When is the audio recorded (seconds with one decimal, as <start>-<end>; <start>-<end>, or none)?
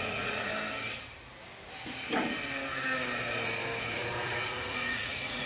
0.5-3.8